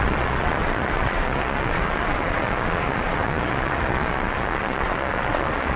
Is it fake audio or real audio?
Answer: fake